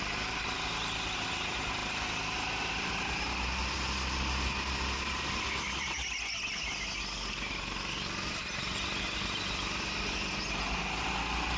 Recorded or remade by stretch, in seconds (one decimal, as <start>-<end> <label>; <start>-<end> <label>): 0.0-11.6 recorded